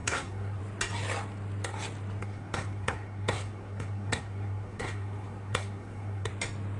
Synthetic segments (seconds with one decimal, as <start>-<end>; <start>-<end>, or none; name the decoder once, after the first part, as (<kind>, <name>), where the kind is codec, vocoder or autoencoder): 0.0-0.6 (codec, SNAC); 2.2-6.3